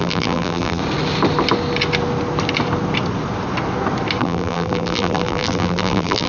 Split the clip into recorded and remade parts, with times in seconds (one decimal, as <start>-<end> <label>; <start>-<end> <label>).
0.0-0.8 remade; 0.8-4.2 recorded; 4.2-6.3 remade